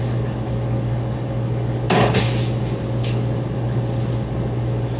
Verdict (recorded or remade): remade